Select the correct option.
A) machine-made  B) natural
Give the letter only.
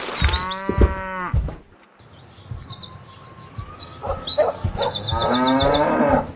B